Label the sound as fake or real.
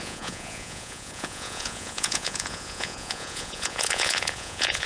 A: fake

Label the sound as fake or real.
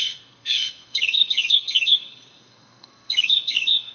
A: fake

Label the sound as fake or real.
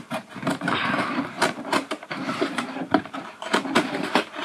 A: fake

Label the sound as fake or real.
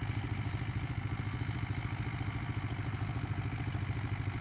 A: real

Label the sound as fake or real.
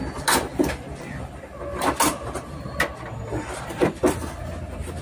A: real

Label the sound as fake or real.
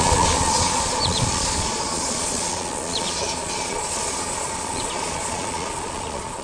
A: fake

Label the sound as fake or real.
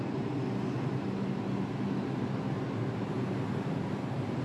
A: real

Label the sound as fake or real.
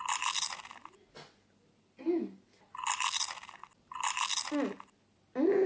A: real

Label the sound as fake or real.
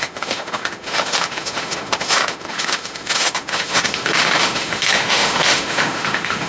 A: fake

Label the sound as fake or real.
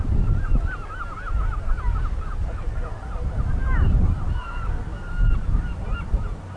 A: fake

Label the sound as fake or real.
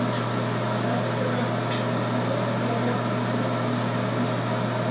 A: real